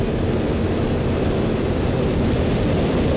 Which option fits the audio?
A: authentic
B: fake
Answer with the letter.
A